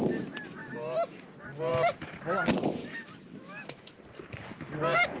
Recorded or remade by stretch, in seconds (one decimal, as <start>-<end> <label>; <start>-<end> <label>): 0.0-0.6 recorded; 0.6-1.2 remade; 1.2-2.8 recorded; 2.8-4.0 remade; 4.0-5.2 recorded